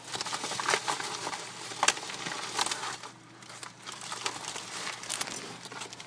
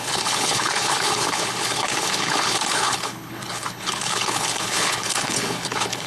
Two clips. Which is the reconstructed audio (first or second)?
second